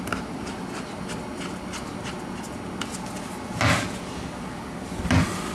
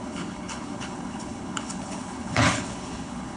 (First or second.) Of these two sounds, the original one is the first